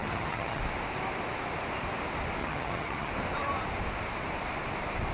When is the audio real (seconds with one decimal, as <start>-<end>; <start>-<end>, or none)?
0.6-2.4; 3.1-5.1